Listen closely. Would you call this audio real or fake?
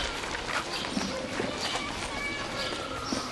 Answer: real